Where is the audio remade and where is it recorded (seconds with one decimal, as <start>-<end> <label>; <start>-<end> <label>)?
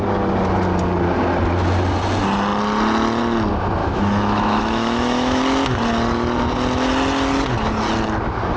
0.0-3.8 recorded; 3.8-5.4 remade; 5.4-8.6 recorded